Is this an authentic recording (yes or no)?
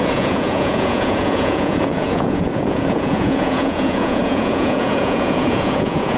no